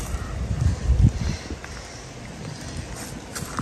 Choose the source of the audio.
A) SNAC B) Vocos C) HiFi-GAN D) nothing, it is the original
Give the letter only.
D